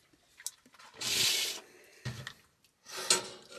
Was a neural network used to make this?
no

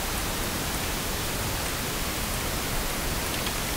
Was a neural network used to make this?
no